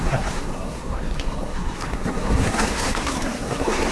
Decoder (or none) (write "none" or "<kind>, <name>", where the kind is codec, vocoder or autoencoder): codec, SNAC